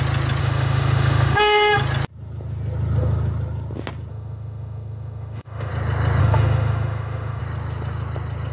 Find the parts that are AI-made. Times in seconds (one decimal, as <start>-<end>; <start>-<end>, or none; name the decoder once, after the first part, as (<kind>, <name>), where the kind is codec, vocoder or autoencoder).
0.4-1.7 (autoencoder, DAC-VAE); 4.1-5.7; 6.2-7.4